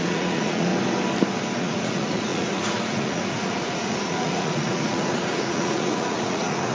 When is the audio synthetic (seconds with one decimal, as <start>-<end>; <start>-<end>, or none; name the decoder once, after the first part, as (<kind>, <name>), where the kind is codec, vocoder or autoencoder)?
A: 0.0-0.7 (vocoder, Vocos); 1.6-6.7